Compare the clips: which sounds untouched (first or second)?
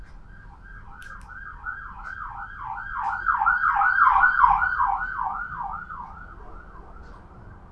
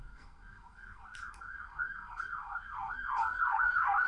first